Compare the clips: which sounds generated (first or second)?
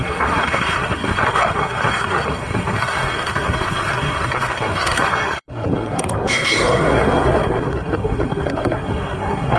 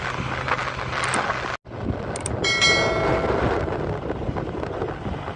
first